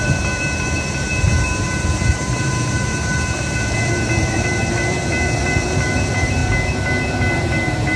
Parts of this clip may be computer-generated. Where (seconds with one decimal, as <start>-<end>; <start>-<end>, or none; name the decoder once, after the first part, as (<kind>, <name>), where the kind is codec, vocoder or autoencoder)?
0.0-6.4 (vocoder, BigVGAN v2); 7.3-8.0